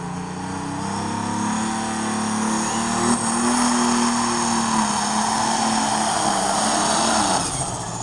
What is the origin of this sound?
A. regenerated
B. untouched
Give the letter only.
B